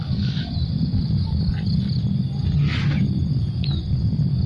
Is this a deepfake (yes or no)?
no